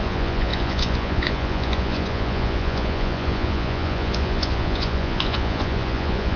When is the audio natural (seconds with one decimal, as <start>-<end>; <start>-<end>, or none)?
none